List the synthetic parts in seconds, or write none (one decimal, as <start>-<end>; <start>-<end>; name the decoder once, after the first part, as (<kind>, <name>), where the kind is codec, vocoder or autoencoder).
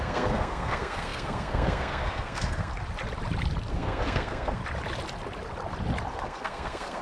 0.0-2.7 (codec, SNAC); 3.7-4.6; 6.1-7.0